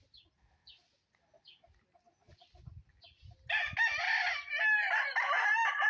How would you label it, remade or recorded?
recorded